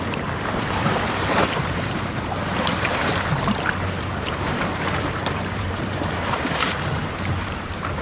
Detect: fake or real fake